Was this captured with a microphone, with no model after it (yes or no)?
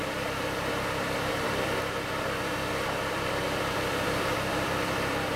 no